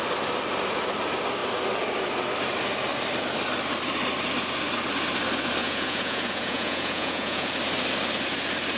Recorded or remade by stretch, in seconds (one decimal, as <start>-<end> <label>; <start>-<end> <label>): 0.0-5.6 recorded; 5.6-7.5 remade; 7.5-8.8 recorded